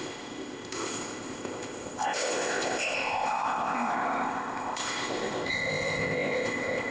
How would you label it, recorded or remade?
remade